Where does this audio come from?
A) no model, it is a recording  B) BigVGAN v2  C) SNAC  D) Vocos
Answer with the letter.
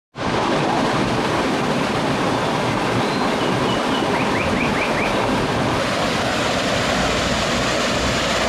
A